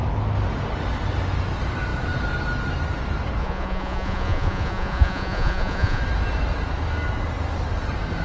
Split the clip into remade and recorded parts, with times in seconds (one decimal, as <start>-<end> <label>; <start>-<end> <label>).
0.0-3.4 recorded; 3.4-6.0 remade; 6.0-8.2 recorded